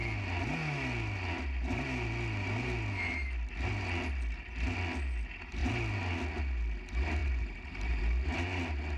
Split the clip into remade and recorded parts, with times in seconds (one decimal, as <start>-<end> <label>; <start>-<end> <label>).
0.0-7.2 recorded; 7.2-8.0 remade; 8.0-9.0 recorded